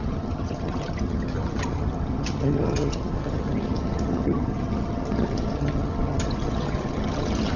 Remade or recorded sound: remade